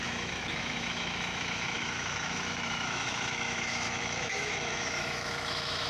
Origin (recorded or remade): remade